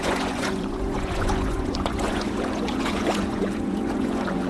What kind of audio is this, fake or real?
fake